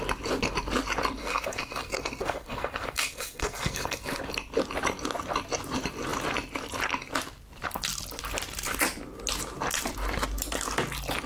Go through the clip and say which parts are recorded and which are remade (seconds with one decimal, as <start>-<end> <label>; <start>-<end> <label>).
0.0-1.2 recorded; 1.2-4.2 remade; 4.2-11.3 recorded

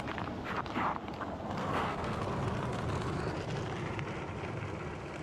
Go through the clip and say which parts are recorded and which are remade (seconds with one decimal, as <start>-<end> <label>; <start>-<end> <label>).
0.0-1.6 recorded; 1.6-2.2 remade; 2.2-5.2 recorded

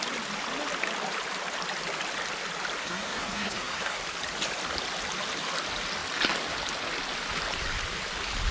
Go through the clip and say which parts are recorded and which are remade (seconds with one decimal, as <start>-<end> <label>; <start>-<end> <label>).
0.0-2.8 recorded; 2.8-4.0 remade; 4.0-8.5 recorded

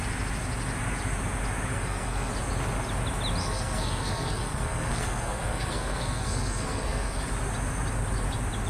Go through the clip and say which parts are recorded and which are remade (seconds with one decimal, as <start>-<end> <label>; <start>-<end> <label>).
0.0-1.7 recorded; 1.7-2.3 remade; 2.3-3.4 recorded; 3.4-7.3 remade; 7.3-8.7 recorded

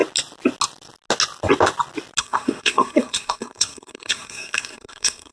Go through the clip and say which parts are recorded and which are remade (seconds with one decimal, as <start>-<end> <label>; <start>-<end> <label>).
0.0-2.2 recorded; 2.2-5.3 remade

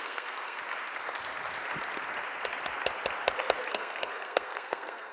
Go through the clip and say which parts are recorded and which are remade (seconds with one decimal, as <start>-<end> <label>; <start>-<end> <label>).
0.0-0.6 remade; 0.6-3.7 recorded; 3.7-5.1 remade

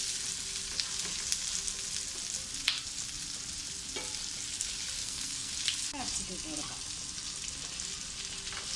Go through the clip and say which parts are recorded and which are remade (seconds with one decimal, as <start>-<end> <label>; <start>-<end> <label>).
0.0-5.0 recorded; 5.0-5.5 remade; 5.5-8.8 recorded

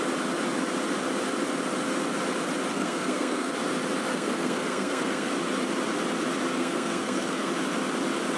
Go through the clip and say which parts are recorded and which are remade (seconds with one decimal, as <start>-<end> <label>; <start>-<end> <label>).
0.0-2.7 recorded; 2.7-3.5 remade; 3.5-4.1 recorded; 4.1-5.3 remade; 5.3-6.6 recorded; 6.6-7.5 remade; 7.5-8.4 recorded